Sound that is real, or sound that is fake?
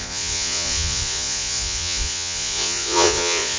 fake